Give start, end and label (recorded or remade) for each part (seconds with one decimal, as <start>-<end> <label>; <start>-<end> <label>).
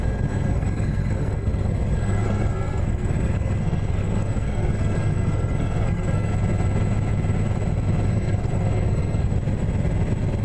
0.0-6.3 remade; 6.3-8.1 recorded; 8.1-9.3 remade; 9.3-10.4 recorded